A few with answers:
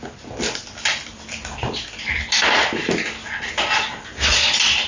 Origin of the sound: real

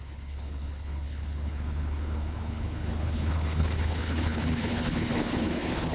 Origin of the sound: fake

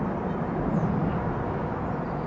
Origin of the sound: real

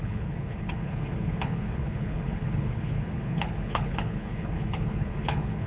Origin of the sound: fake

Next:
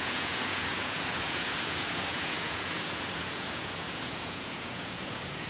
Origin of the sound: fake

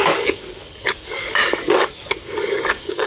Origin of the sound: fake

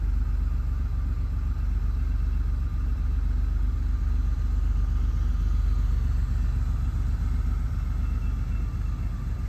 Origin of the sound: real